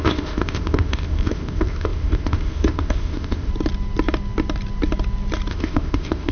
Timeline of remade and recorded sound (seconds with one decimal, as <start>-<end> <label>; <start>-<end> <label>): 0.0-3.5 remade; 3.5-5.5 recorded; 5.5-6.3 remade